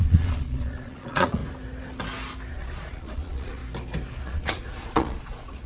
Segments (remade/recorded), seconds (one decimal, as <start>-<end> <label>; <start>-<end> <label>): 0.0-1.4 remade; 1.4-2.5 recorded; 2.5-3.6 remade; 3.6-4.2 recorded; 4.2-5.7 remade